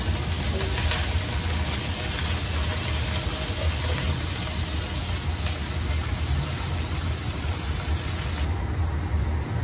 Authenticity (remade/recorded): recorded